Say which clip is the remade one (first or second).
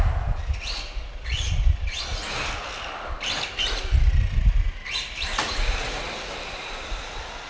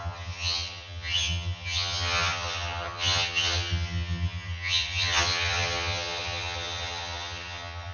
second